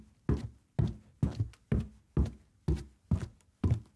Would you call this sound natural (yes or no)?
yes